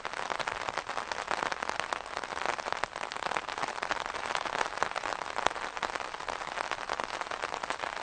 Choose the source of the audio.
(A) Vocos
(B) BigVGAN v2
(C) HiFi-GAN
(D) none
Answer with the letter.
D